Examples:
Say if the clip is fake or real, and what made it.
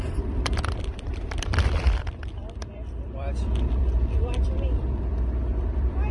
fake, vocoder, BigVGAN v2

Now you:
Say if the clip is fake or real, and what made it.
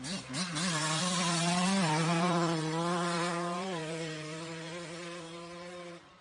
fake, vocoder, BigVGAN v2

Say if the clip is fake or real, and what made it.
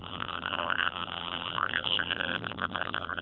fake, vocoder, BigVGAN v2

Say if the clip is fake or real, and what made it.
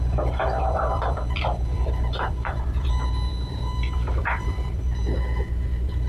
fake, vocoder, BigVGAN v2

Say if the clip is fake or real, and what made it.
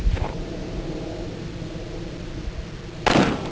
real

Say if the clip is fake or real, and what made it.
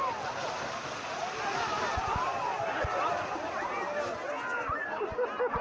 real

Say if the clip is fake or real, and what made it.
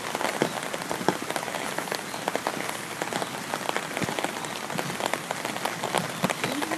real